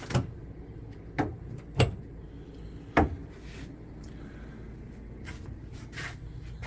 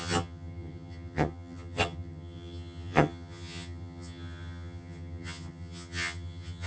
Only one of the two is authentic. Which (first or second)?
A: first